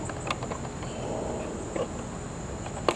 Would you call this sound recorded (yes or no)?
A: yes